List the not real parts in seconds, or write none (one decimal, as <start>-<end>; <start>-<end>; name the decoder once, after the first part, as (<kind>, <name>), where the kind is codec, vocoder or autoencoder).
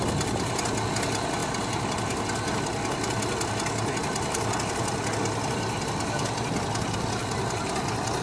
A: none